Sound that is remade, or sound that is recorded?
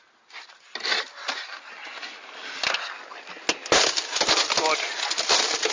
recorded